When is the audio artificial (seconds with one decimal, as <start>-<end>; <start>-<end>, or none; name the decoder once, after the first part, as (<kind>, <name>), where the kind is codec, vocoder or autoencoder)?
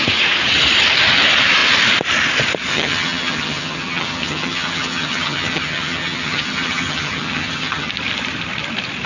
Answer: 2.7-7.9 (vocoder, HiFi-GAN)